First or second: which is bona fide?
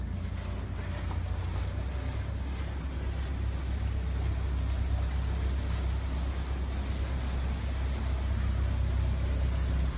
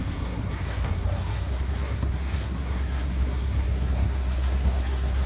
first